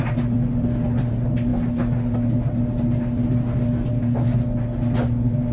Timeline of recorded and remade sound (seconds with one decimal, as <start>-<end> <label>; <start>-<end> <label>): 0.0-5.5 recorded